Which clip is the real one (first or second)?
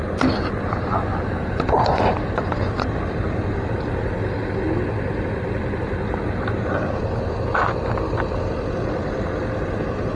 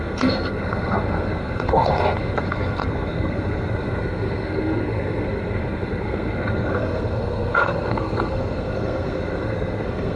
first